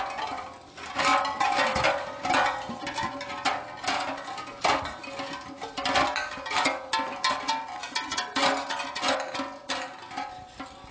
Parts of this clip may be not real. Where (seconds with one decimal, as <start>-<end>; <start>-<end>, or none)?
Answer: none